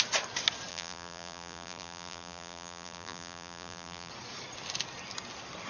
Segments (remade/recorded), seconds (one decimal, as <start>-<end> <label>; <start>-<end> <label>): 0.0-0.7 recorded; 0.7-4.1 remade; 4.1-5.7 recorded

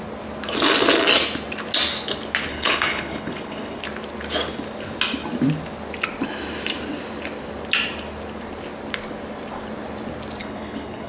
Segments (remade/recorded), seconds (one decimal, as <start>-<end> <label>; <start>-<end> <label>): 0.0-2.5 recorded; 2.5-3.8 remade; 3.8-10.4 recorded; 10.4-11.1 remade

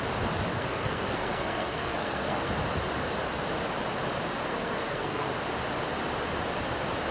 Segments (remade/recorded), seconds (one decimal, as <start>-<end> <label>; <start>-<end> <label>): 0.0-0.5 recorded; 0.5-2.5 remade; 2.5-4.5 recorded; 4.5-5.3 remade; 5.3-7.1 recorded

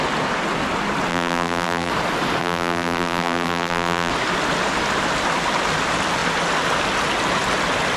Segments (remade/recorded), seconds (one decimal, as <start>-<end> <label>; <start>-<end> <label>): 0.0-1.1 recorded; 1.1-1.9 remade; 1.9-2.4 recorded; 2.4-4.1 remade; 4.1-8.0 recorded